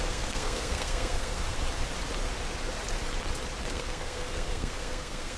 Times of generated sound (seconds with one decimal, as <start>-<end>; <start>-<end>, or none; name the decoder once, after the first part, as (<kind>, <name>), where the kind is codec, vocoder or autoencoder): 0.0-1.6 (codec, SNAC); 3.7-5.4

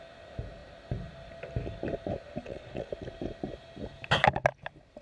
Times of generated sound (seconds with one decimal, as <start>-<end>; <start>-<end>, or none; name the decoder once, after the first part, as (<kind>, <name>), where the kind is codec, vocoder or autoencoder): 2.4-2.9 (vocoder, Vocos)

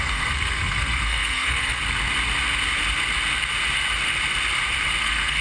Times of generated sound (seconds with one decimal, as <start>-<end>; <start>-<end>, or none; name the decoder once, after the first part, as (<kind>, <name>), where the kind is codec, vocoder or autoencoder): 0.0-1.8 (codec, SNAC); 5.0-5.4